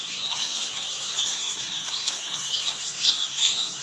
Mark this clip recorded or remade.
remade